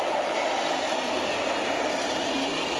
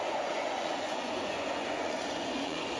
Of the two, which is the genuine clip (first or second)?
first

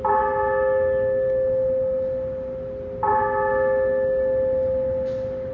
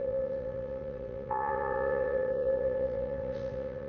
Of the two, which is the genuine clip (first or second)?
first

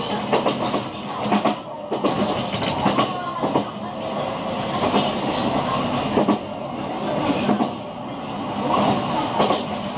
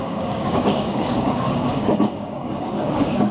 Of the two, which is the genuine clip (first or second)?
first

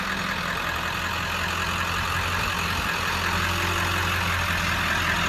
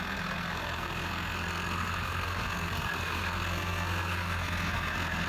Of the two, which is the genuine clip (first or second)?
first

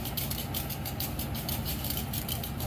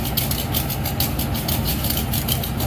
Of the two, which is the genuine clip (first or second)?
second